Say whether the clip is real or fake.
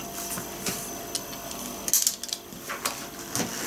real